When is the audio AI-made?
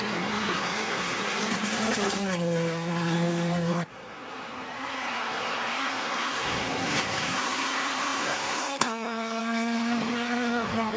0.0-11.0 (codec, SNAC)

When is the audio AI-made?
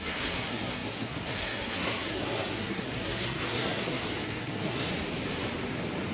0.0-4.9 (codec, SNAC)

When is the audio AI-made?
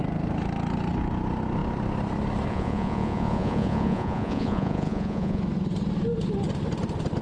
2.5-5.4 (vocoder, Vocos)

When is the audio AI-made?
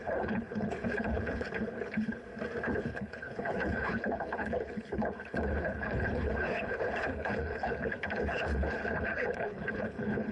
0.0-2.3 (codec, HILCodec); 2.8-10.3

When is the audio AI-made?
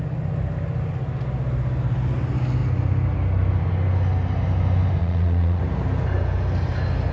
5.0-5.6 (vocoder, Vocos)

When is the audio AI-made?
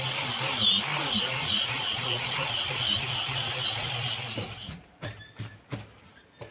0.9-3.9 (vocoder, Vocos); 4.4-5.1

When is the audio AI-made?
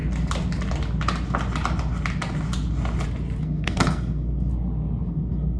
3.4-4.5 (codec, SNAC); 5.1-5.6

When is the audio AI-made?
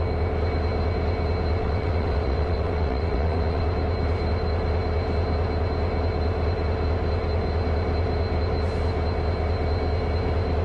1.6-3.6 (vocoder, WaveNeXt)